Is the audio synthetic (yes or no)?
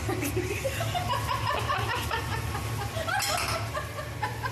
no